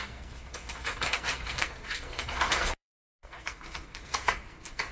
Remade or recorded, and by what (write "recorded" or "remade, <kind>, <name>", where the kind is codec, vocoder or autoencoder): remade, codec, SNAC